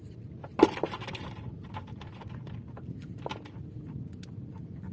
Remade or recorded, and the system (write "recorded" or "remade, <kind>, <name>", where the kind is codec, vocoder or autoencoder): recorded